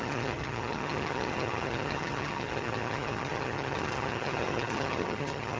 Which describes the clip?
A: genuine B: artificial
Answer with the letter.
B